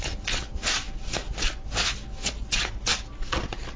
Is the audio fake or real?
real